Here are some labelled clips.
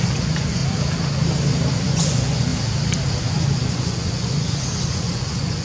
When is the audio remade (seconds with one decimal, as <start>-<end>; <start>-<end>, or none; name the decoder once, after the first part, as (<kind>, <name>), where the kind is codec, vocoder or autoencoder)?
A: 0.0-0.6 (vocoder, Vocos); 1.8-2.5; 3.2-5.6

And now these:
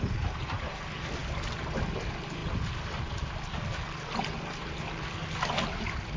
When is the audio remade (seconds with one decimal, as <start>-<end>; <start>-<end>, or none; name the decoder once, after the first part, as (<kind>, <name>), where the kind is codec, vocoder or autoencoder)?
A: none

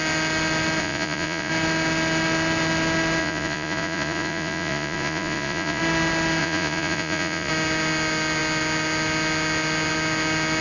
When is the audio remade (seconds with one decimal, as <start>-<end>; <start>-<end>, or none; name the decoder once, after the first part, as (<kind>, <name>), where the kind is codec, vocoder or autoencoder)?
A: 0.8-1.5 (vocoder, Vocos); 3.2-5.8; 6.4-7.5

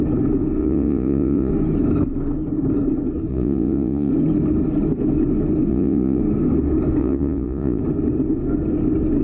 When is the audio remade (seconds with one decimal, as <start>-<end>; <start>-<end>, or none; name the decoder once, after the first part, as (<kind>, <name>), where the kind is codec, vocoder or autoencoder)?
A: 0.6-1.5 (vocoder, Vocos); 3.3-4.1; 5.7-6.2; 7.0-7.8

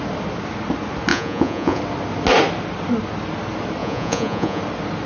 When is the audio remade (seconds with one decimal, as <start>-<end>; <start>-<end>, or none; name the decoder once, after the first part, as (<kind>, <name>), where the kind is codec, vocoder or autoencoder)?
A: 1.1-1.8 (vocoder, Vocos); 3.8-4.6

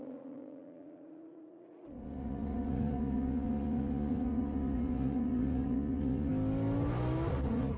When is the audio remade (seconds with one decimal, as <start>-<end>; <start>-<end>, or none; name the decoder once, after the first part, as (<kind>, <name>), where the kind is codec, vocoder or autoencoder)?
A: 0.0-6.3 (vocoder, Vocos); 7.3-7.8

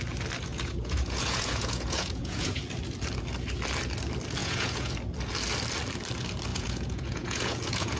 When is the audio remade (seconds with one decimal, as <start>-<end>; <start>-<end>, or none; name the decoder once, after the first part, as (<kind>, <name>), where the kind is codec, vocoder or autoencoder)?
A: 0.5-2.6 (vocoder, Vocos); 4.4-4.9; 6.5-8.0